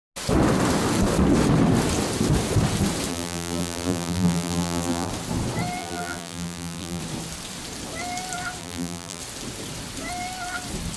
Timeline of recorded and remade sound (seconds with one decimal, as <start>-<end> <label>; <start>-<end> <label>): 0.0-3.1 recorded; 3.1-5.1 remade; 5.1-5.8 recorded; 5.8-7.0 remade; 7.0-8.6 recorded; 8.6-9.2 remade; 9.2-11.0 recorded